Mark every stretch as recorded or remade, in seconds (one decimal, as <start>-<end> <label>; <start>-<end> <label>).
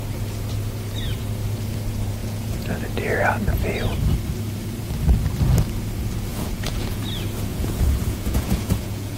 0.0-2.2 recorded; 2.2-2.7 remade; 2.7-6.3 recorded; 6.3-7.0 remade; 7.0-7.5 recorded; 7.5-9.2 remade